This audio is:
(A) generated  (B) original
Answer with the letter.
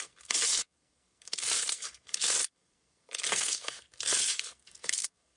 A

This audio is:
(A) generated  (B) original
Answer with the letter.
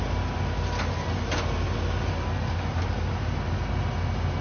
B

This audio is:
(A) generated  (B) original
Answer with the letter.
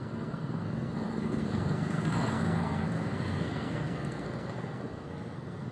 A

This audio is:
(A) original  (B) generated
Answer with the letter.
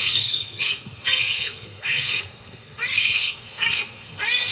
B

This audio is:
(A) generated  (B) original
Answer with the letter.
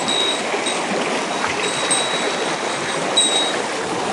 B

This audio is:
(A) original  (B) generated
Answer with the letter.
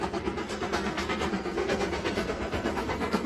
B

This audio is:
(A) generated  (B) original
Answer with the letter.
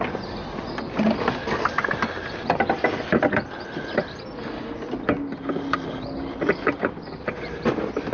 B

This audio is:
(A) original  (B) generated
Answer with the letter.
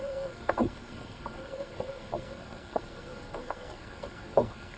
B